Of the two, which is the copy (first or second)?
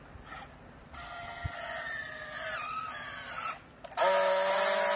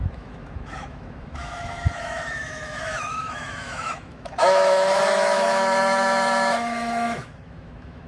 second